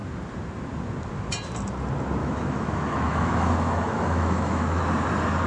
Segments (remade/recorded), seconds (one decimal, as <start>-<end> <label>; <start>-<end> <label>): 0.0-2.2 recorded; 2.2-4.8 remade; 4.8-5.5 recorded